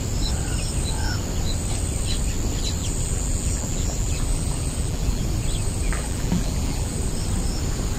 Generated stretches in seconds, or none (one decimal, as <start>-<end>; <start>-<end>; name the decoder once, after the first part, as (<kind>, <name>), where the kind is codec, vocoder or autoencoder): 2.8-5.2 (vocoder, BigVGAN v2); 5.8-7.0

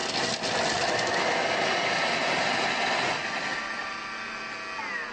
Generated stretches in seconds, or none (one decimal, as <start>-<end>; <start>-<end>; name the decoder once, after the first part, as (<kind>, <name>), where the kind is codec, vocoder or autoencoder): none

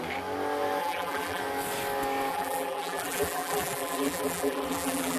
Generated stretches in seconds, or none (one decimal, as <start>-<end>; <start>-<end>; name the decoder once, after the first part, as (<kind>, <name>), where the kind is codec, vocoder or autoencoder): 0.8-1.4 (vocoder, BigVGAN v2); 2.3-5.2